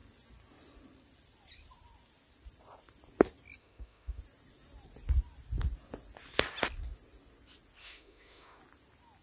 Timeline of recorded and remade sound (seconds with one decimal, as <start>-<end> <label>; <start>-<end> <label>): 0.0-3.6 recorded; 3.6-4.2 remade; 4.2-7.8 recorded; 7.8-8.6 remade; 8.6-9.2 recorded